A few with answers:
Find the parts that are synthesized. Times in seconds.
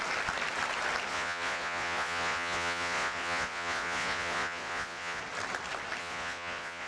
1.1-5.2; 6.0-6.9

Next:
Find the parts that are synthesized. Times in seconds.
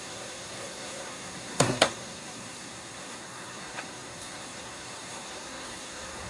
0.0-6.3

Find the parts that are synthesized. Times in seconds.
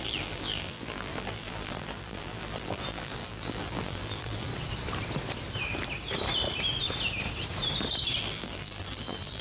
0.0-4.5; 8.2-9.4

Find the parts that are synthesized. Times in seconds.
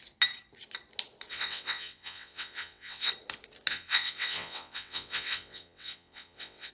1.3-3.1; 3.7-6.7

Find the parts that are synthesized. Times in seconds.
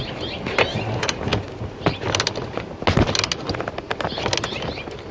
none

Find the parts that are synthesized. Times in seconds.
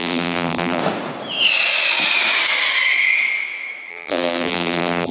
0.0-0.8; 3.9-5.1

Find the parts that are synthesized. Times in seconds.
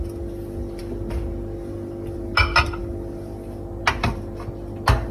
none